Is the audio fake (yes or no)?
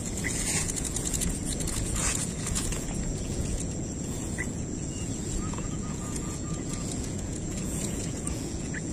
yes